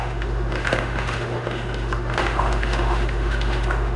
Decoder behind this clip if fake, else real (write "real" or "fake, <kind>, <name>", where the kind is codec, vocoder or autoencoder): fake, autoencoder, DAC-VAE